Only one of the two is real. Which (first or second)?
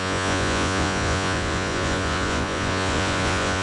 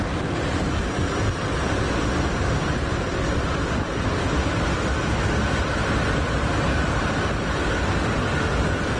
second